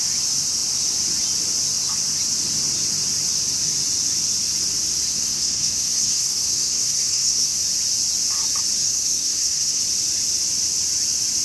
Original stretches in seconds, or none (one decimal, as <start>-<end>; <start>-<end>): 0.0-5.1; 7.6-8.8; 9.8-11.4